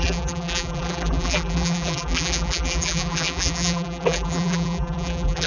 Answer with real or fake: fake